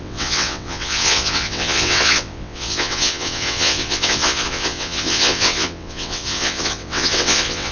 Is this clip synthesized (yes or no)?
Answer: yes